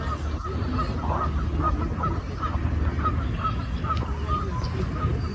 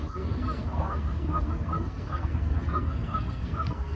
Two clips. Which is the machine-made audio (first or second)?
second